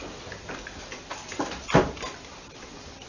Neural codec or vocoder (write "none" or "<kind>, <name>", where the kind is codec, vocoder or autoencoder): none